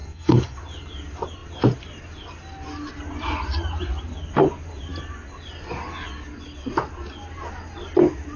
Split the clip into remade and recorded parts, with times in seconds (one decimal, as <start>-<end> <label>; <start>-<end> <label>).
0.0-0.6 remade; 0.6-8.4 recorded